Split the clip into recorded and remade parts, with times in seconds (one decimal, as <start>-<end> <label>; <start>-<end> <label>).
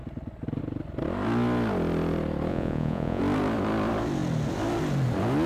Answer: 0.0-2.5 recorded; 2.5-3.2 remade; 3.2-5.5 recorded